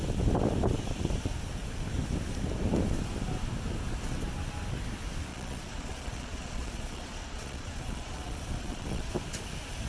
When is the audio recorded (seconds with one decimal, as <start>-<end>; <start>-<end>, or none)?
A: 0.0-5.3; 9.1-9.9